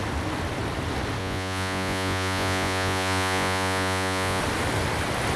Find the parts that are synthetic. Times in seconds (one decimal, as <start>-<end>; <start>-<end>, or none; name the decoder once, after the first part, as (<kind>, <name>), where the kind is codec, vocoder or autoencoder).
1.2-4.4 (vocoder, Vocos)